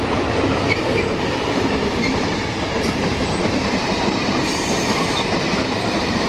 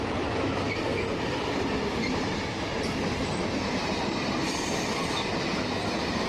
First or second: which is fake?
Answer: first